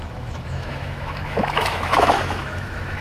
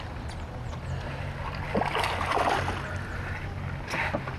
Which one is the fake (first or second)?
first